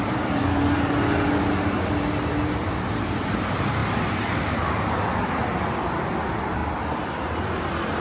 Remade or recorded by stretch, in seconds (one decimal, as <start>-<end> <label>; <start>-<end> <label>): 0.0-8.0 recorded